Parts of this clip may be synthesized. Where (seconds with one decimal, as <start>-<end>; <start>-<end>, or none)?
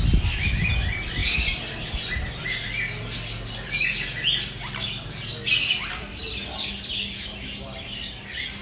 none